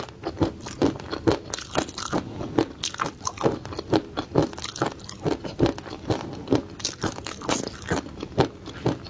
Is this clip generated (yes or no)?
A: no